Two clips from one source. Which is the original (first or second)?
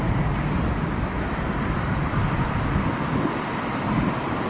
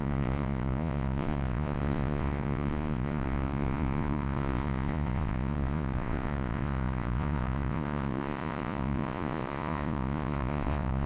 first